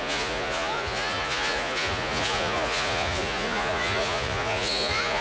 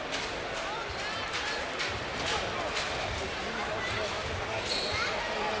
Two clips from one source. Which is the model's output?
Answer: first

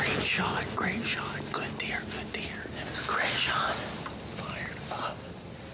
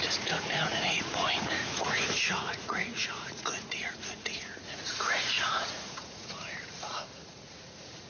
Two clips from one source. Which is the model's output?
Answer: second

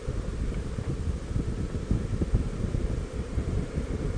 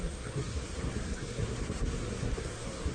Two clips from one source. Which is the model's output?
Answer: second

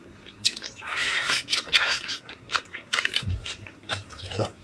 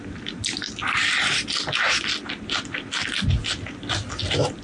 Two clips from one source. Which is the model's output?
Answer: first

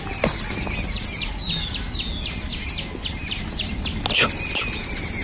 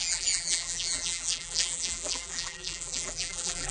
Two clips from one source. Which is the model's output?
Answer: second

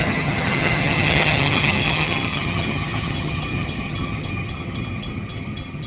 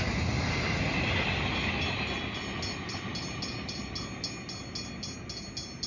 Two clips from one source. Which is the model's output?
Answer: first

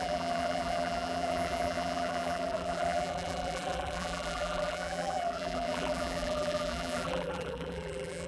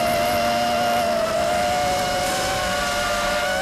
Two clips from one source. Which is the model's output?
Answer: first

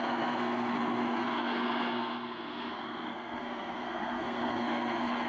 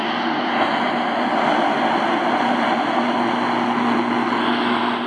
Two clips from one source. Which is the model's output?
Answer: first